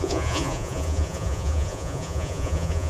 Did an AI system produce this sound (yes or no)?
yes